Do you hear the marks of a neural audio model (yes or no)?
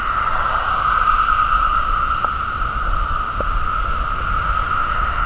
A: no